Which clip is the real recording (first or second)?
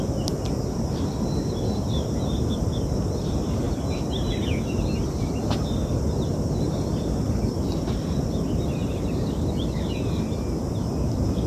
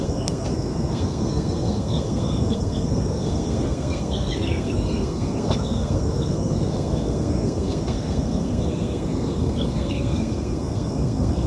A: first